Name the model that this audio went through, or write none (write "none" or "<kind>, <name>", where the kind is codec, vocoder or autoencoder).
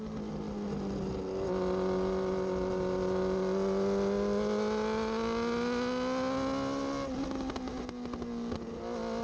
none